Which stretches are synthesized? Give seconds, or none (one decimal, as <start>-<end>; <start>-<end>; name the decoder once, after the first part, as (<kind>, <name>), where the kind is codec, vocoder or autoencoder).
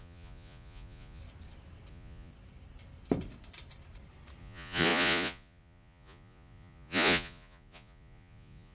0.0-1.2 (vocoder, Vocos); 1.9-2.3; 4.4-8.7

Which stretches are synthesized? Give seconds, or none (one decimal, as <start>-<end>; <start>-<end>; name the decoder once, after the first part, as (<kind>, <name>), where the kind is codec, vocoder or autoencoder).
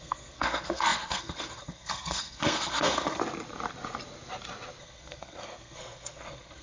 0.0-3.2 (codec, SNAC); 4.8-6.6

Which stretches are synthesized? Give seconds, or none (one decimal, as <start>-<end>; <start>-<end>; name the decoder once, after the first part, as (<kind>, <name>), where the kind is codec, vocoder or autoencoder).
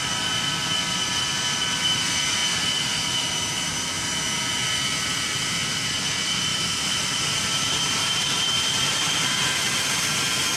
6.5-9.5 (vocoder, BigVGAN v2)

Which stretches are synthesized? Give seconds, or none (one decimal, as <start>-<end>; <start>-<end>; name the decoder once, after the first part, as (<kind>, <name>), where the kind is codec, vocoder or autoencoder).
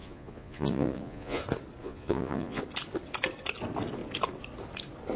0.0-1.4 (vocoder, Vocos); 1.8-2.6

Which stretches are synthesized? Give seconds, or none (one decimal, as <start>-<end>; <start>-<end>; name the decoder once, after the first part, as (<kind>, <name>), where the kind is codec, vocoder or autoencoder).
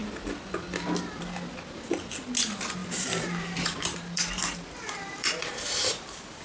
2.8-6.4 (vocoder, BigVGAN v2)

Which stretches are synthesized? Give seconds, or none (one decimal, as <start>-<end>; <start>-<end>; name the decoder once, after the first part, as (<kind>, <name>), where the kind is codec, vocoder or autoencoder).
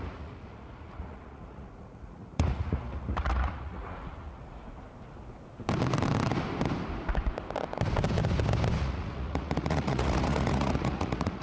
0.0-4.6 (vocoder, Vocos); 8.8-11.4